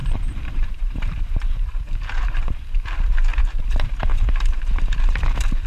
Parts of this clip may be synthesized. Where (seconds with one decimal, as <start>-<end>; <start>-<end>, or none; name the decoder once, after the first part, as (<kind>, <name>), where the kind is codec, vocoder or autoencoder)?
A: 0.0-3.4 (vocoder, BigVGAN v2); 4.1-5.0